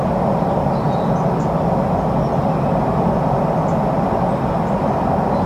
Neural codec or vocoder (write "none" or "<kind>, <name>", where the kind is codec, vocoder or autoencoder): none